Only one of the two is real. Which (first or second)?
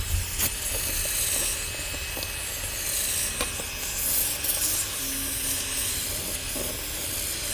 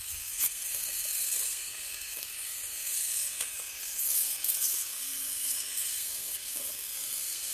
first